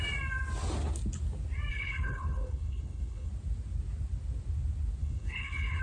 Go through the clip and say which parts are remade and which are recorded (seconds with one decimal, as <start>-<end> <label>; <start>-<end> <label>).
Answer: 0.0-1.7 recorded; 1.7-3.3 remade; 3.3-5.0 recorded; 5.0-5.8 remade